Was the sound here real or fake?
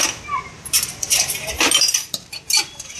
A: fake